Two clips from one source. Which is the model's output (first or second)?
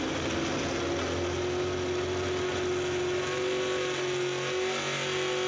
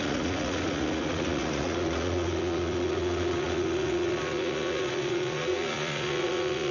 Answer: second